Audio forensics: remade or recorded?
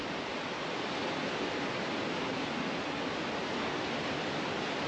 recorded